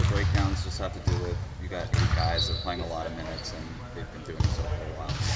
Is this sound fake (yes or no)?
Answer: no